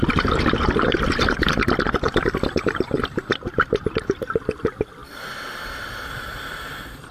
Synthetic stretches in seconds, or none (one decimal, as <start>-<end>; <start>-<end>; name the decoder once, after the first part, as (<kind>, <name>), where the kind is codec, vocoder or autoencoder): 5.0-6.3 (vocoder, BigVGAN v2)